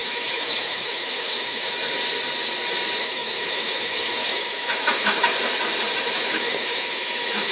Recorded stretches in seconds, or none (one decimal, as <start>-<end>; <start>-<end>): 1.7-3.0; 5.3-6.0